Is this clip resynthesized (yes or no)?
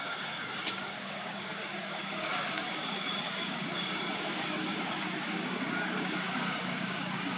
yes